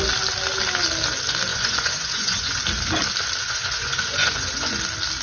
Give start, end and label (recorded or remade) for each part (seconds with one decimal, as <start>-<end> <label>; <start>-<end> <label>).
0.0-1.5 recorded; 1.5-2.6 remade; 2.6-3.4 recorded; 3.4-4.8 remade; 4.8-5.2 recorded